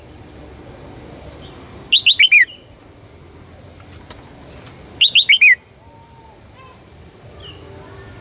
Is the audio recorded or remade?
recorded